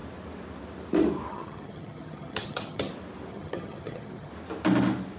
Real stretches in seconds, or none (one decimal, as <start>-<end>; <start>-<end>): 0.0-1.3; 2.9-3.3; 4.3-5.2

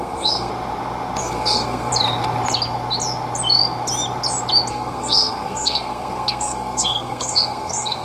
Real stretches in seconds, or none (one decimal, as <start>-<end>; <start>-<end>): 0.5-1.2; 1.9-4.7

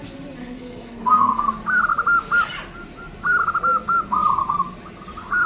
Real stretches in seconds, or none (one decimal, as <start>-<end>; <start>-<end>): 0.0-0.4; 1.5-5.5